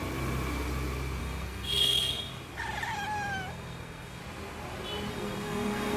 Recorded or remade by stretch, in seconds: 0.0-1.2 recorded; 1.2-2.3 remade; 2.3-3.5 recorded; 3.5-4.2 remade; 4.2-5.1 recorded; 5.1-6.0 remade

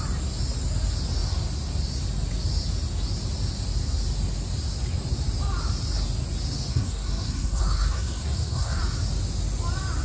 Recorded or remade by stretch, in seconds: 0.0-6.7 recorded; 6.7-8.8 remade; 8.8-10.0 recorded

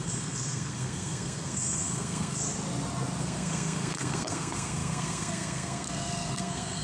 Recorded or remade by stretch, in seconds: 0.0-2.4 remade; 2.4-3.2 recorded; 3.2-6.8 remade